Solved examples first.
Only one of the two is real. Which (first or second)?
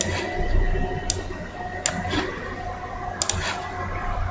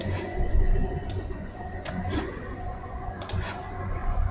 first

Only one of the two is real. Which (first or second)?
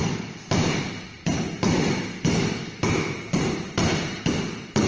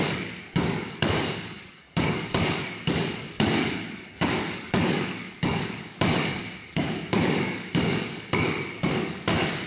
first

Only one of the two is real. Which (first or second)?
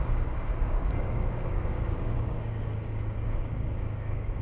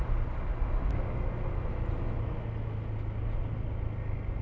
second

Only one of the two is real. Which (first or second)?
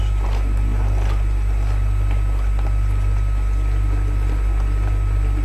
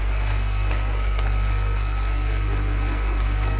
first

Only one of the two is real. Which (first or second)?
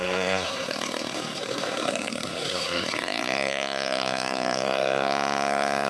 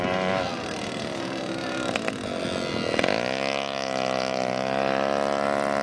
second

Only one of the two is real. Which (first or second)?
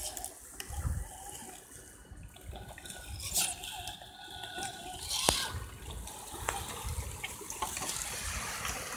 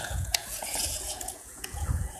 first